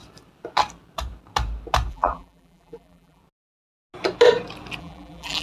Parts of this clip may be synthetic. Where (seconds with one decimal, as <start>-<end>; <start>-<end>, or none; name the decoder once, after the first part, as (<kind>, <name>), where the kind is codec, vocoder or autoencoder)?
1.9-3.2 (vocoder, BigVGAN v2); 4.8-5.4